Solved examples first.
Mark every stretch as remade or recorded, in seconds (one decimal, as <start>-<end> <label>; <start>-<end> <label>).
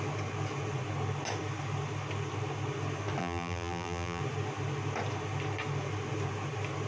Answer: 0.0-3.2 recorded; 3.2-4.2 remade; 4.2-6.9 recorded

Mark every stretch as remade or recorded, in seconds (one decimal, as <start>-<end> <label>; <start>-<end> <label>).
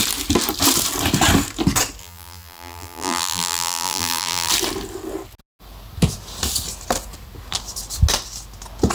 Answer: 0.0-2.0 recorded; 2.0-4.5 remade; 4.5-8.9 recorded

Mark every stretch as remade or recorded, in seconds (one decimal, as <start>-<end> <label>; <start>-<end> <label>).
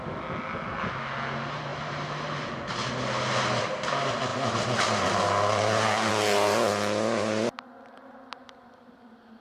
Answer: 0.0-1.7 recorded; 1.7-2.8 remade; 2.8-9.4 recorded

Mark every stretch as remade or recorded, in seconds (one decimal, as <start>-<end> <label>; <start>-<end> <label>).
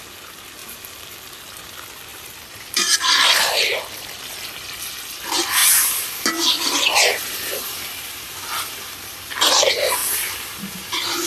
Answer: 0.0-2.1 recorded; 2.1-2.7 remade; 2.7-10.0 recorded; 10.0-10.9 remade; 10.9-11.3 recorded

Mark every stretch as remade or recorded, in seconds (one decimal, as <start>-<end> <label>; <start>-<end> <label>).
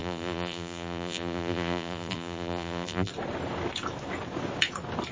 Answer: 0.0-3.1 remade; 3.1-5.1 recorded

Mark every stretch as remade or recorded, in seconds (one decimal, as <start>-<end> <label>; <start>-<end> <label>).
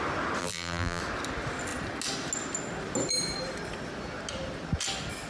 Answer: 0.0-0.4 recorded; 0.4-1.0 remade; 1.0-5.3 recorded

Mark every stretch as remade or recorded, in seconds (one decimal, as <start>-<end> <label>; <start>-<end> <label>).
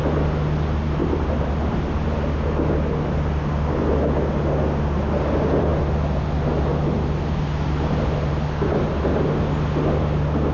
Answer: 0.0-1.0 recorded; 1.0-1.8 remade; 1.8-10.5 recorded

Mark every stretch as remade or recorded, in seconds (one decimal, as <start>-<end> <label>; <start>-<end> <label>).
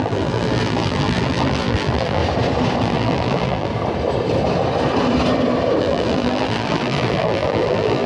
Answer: 0.0-2.2 remade; 2.2-2.8 recorded; 2.8-3.7 remade; 3.7-5.8 recorded; 5.8-8.1 remade